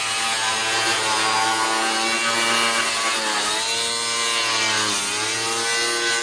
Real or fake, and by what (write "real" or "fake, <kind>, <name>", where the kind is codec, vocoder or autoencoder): real